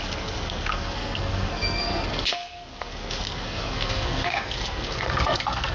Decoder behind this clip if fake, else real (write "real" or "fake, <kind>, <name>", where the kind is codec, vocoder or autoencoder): fake, codec, SNAC